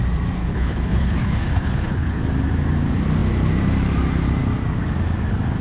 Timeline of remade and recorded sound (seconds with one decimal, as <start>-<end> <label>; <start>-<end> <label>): 0.0-0.4 recorded; 0.4-2.2 remade; 2.2-5.6 recorded